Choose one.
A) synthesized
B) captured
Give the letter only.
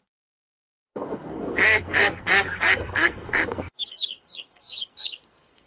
A